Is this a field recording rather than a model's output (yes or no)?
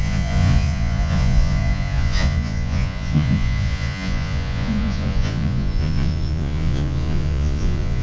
no